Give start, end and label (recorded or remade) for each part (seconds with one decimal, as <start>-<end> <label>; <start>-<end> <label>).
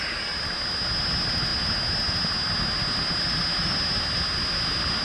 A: 0.0-5.0 recorded